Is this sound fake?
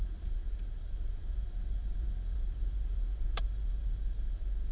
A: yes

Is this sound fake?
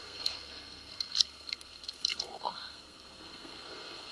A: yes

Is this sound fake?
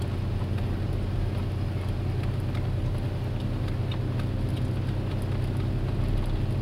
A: no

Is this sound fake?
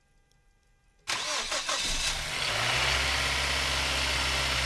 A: no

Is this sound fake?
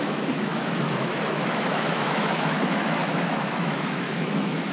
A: yes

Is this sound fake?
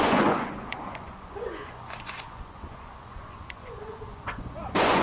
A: yes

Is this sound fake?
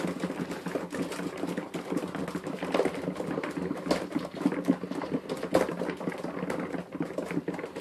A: no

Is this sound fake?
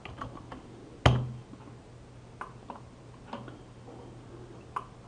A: no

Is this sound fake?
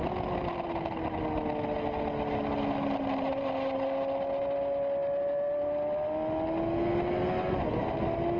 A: no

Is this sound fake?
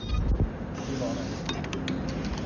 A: no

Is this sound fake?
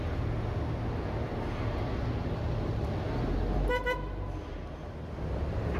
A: no